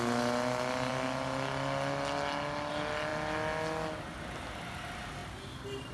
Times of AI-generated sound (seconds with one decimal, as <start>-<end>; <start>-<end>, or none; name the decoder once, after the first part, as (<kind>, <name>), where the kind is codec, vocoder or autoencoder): none